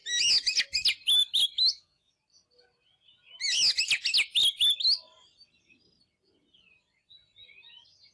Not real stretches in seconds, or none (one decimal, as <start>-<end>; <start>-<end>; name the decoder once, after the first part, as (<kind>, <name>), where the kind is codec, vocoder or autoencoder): 1.2-2.1 (autoencoder, DAC-VAE)